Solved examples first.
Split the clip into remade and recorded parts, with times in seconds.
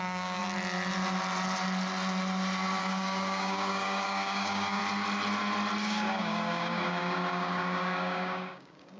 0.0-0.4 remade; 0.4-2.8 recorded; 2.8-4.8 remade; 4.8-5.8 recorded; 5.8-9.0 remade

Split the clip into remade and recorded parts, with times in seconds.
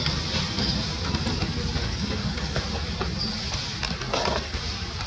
0.0-1.8 recorded; 1.8-2.6 remade; 2.6-5.1 recorded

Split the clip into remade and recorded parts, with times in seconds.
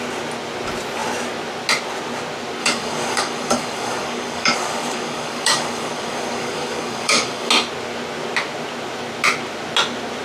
0.0-2.6 recorded; 2.6-7.5 remade; 7.5-10.2 recorded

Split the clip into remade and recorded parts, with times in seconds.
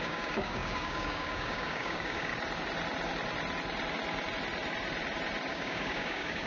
0.0-2.3 remade; 2.3-5.5 recorded; 5.5-6.5 remade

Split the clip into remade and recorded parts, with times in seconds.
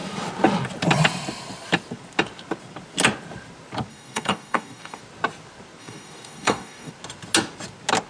0.0-3.9 recorded; 3.9-5.0 remade; 5.0-5.8 recorded; 5.8-6.9 remade; 6.9-8.1 recorded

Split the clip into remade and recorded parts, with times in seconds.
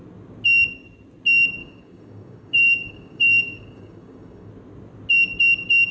0.0-1.6 recorded; 1.6-4.5 remade; 4.5-5.9 recorded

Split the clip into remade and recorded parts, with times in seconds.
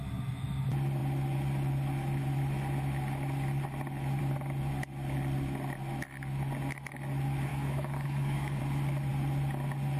0.0-7.5 recorded; 7.5-8.6 remade; 8.6-10.0 recorded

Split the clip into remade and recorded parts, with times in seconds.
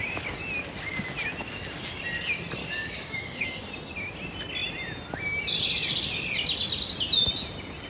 0.0-2.6 recorded; 2.6-3.6 remade; 3.6-7.9 recorded